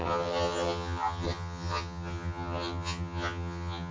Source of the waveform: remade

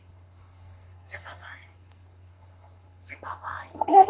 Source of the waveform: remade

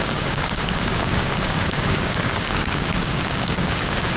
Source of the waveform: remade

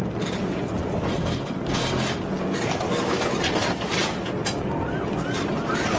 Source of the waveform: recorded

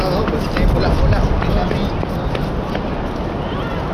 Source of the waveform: recorded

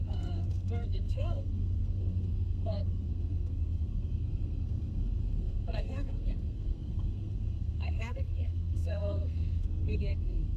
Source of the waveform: remade